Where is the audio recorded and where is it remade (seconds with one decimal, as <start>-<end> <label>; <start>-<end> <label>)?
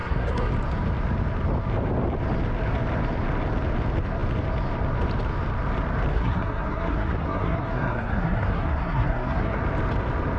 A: 0.0-0.5 remade; 0.5-6.1 recorded; 6.1-9.6 remade; 9.6-10.4 recorded